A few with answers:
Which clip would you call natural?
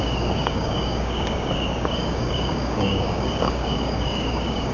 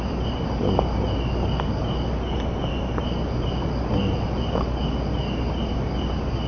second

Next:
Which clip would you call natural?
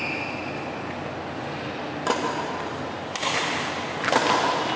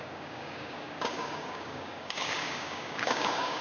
first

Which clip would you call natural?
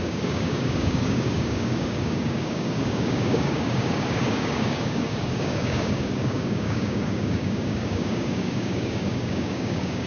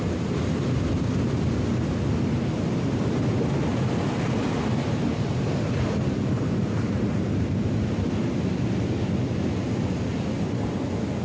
second